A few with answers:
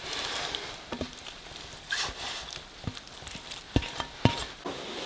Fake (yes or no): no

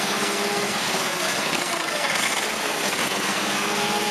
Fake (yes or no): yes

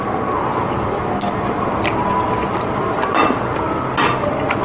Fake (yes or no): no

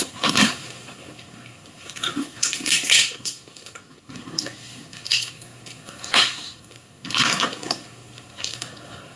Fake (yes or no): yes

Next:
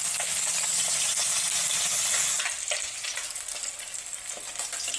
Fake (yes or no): no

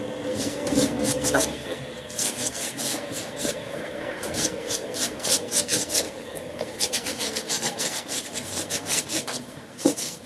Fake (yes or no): yes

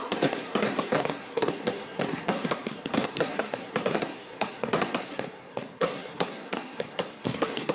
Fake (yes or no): yes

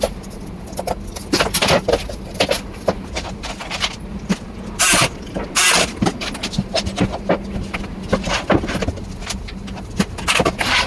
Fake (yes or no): no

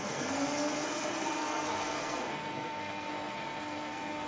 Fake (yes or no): yes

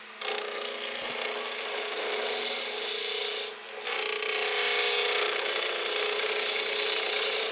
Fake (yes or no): no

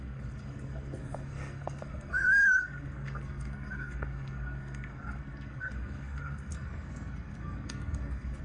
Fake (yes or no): yes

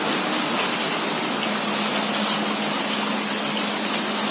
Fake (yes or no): no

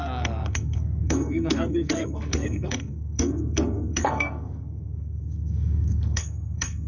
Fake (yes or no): yes